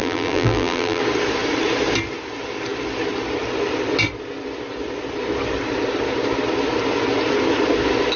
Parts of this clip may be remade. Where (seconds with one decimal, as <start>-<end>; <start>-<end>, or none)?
0.0-1.0